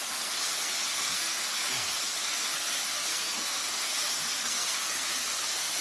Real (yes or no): no